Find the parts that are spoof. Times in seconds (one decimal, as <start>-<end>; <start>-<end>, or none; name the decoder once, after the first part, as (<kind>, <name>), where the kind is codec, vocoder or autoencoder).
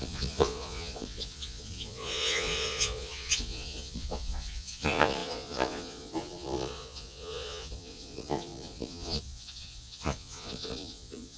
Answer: 0.0-11.4 (vocoder, Vocos)